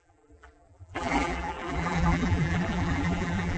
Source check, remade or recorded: remade